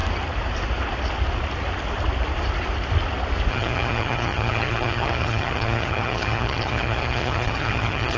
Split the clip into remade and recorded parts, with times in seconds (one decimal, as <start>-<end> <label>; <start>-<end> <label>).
0.0-3.5 recorded; 3.5-8.2 remade